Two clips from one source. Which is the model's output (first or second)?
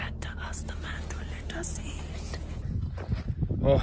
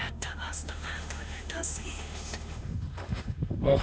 second